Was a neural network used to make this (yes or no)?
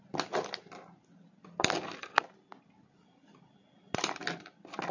no